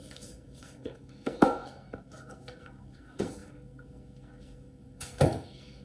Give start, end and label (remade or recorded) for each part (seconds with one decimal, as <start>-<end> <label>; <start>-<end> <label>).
0.0-5.8 remade